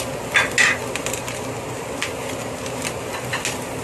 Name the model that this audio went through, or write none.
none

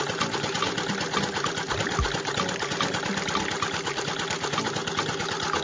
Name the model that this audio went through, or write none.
none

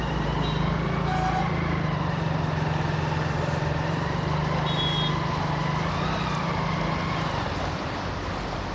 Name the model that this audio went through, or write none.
none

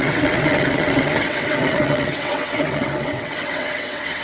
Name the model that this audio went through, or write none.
vocoder, WaveNeXt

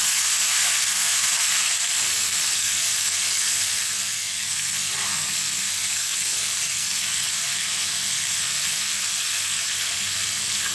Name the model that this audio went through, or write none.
codec, SNAC